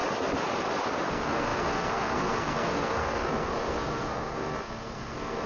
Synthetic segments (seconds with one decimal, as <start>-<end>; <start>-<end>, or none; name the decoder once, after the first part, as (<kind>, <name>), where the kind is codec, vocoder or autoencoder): 1.1-5.5 (codec, SNAC)